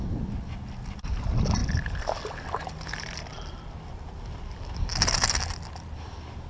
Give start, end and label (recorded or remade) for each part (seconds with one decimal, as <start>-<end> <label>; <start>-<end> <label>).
0.0-6.5 recorded